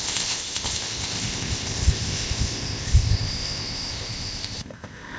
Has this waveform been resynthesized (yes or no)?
yes